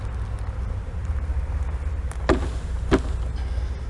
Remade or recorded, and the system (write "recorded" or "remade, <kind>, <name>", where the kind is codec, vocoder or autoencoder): recorded